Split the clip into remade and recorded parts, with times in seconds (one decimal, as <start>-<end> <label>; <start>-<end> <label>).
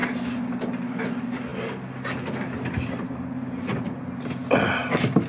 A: 0.0-5.3 recorded